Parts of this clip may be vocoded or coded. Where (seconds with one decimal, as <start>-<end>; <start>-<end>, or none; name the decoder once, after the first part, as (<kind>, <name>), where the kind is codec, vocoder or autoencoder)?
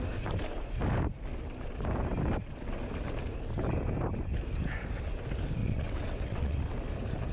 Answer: 5.6-6.7 (vocoder, WaveNeXt)